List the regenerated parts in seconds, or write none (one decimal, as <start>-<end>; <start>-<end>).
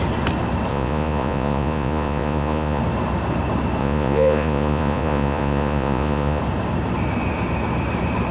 0.7-2.8; 3.8-6.4